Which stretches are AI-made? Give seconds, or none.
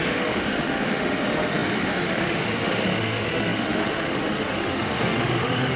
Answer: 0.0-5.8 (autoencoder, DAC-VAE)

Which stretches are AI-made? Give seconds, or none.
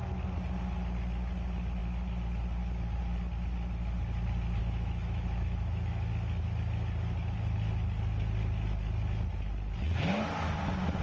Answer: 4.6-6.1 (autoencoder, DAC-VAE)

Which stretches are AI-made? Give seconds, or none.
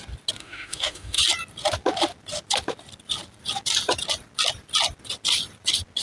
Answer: 0.4-1.2 (autoencoder, DAC-VAE)